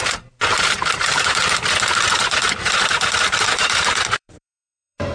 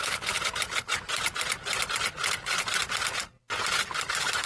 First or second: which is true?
second